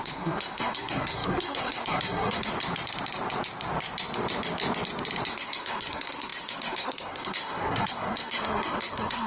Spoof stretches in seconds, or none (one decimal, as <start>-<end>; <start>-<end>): 0.0-2.5; 5.3-9.3